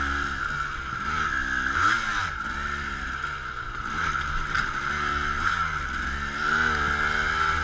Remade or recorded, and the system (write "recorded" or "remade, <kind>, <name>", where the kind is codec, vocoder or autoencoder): recorded